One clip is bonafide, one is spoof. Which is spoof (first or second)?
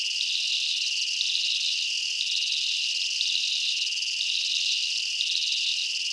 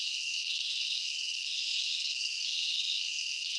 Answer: second